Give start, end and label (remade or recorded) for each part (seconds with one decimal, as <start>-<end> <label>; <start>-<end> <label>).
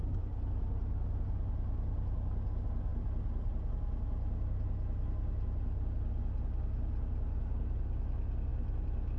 0.0-9.2 recorded